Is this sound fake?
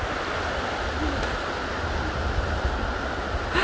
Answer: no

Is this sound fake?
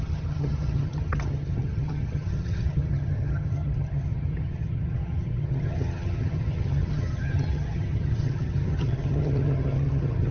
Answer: yes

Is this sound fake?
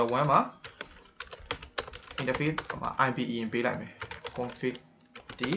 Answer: no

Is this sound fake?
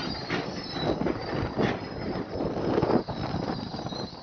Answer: no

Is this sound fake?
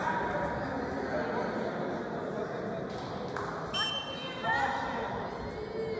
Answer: no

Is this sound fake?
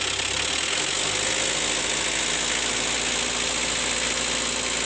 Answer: no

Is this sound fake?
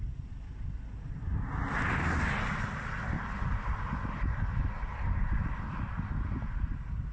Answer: no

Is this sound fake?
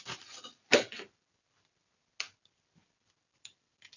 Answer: no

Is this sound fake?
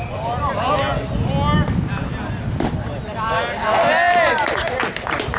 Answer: no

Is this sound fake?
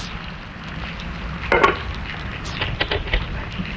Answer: no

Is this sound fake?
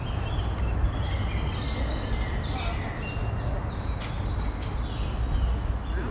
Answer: no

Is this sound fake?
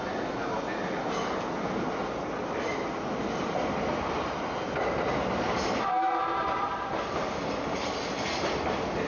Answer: no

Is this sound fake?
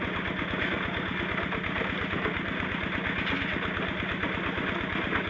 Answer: no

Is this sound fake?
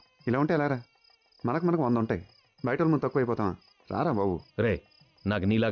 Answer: no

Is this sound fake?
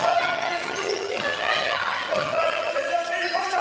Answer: yes